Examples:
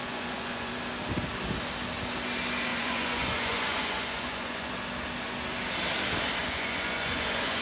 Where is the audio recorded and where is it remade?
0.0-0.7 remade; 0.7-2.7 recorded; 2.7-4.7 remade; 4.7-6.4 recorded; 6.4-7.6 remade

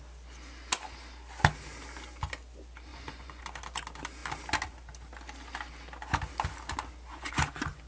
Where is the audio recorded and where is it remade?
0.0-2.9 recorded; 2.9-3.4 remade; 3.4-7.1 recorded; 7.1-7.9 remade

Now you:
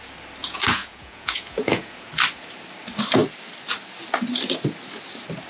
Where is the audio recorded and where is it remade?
0.0-0.4 recorded; 0.4-2.1 remade; 2.1-5.5 recorded